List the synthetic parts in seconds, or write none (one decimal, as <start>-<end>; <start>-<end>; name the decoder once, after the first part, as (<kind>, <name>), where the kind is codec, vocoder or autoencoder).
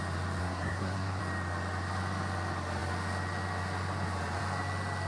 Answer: 0.4-1.2 (codec, SNAC)